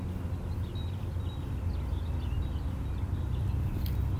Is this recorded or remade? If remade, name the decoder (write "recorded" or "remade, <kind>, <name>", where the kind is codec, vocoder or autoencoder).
recorded